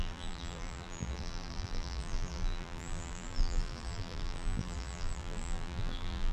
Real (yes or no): no